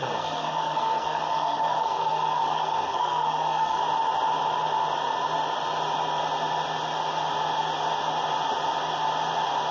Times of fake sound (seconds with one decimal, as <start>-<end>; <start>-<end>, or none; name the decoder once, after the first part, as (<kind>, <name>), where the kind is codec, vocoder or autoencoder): 0.0-3.8 (codec, SNAC)